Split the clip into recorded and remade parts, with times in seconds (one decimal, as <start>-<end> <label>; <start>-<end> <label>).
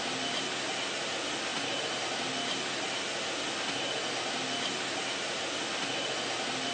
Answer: 0.0-1.5 recorded; 1.5-2.0 remade; 2.0-6.7 recorded